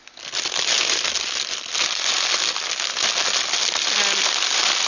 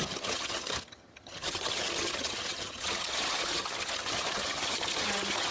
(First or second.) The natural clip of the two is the first